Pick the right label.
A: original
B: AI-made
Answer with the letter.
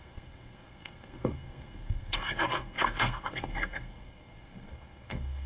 B